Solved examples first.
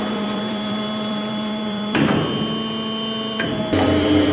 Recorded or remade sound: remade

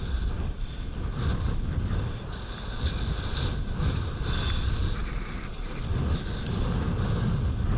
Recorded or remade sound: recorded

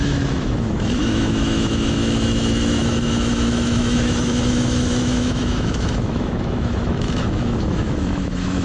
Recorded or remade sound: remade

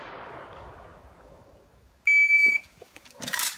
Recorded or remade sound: remade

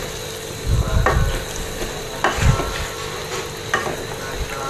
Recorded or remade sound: remade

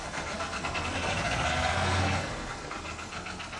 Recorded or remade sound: remade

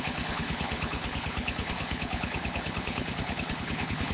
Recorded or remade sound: remade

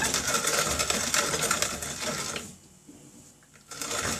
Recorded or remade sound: recorded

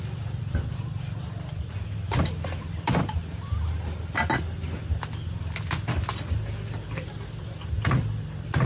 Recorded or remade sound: recorded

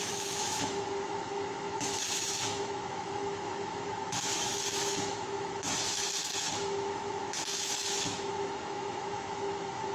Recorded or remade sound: remade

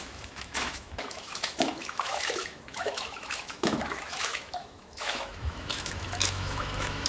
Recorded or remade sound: remade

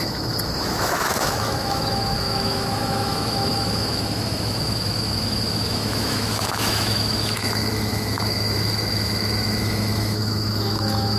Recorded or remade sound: remade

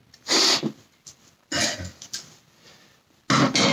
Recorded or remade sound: recorded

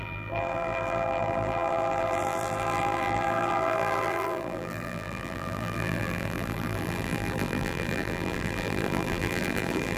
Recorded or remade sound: remade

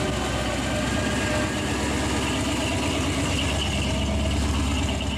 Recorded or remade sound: recorded